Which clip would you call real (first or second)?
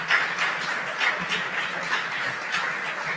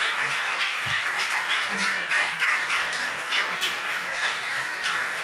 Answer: first